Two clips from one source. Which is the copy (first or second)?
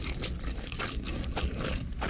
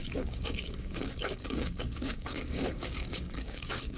second